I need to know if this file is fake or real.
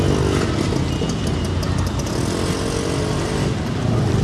real